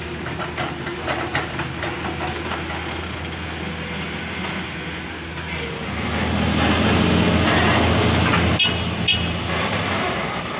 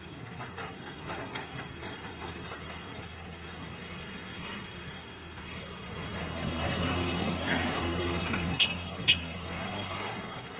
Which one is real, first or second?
first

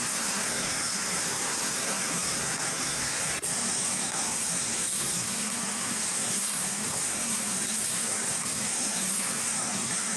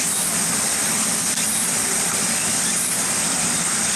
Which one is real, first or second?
second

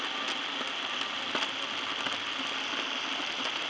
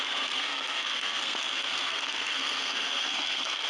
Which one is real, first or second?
first